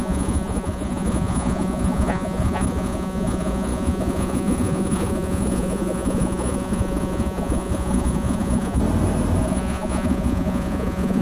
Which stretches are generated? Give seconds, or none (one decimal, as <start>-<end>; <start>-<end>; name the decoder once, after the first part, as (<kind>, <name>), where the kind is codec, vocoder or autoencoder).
0.0-8.8 (vocoder, Vocos); 9.4-11.2